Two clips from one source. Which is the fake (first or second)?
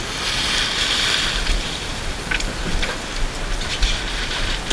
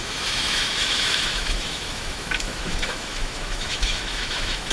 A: second